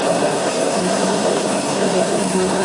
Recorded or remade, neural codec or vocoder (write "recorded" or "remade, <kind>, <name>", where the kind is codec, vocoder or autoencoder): remade, codec, SNAC